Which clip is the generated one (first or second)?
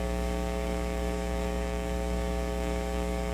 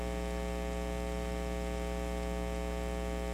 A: first